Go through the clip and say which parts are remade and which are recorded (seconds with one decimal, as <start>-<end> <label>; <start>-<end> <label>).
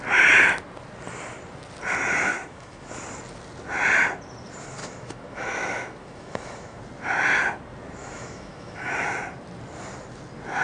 0.0-2.3 recorded; 2.3-2.9 remade; 2.9-4.8 recorded; 4.8-6.8 remade; 6.8-8.0 recorded; 8.0-8.9 remade; 8.9-10.6 recorded